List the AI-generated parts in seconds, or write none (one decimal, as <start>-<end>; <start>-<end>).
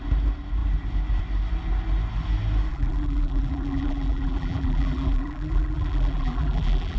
2.7-7.0